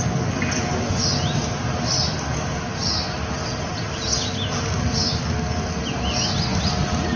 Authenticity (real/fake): real